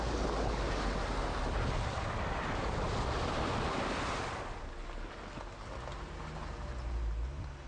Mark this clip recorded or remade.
recorded